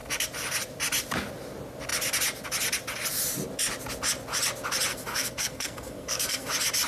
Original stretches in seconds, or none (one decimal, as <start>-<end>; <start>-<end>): 0.0-4.9; 6.5-6.9